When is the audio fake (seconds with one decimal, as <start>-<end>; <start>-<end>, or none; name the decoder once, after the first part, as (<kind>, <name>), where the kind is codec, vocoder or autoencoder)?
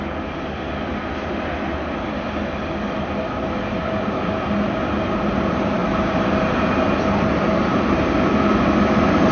none